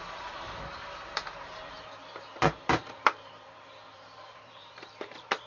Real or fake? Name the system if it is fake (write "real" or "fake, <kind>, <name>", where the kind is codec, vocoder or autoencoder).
fake, vocoder, BigVGAN v2